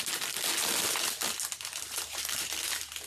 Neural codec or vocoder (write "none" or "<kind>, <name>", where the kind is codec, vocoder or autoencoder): none